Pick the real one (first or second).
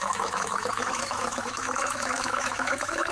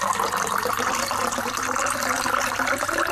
second